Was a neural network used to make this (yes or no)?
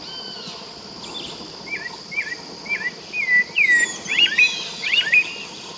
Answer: no